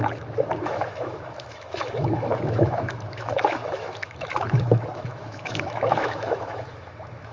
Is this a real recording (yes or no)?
no